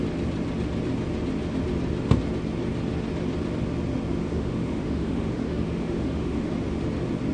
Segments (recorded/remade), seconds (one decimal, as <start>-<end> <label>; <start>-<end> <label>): 0.0-4.2 recorded; 4.2-6.5 remade; 6.5-7.3 recorded